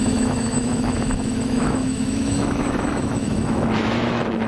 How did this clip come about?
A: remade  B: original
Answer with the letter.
A